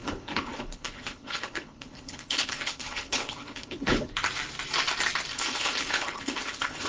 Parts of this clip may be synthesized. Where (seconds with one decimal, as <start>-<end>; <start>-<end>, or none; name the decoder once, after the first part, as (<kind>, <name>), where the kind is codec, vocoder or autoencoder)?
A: 0.0-4.1 (codec, HILCodec); 5.3-6.9